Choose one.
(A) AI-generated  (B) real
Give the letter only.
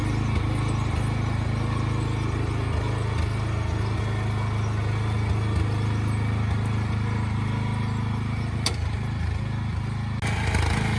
B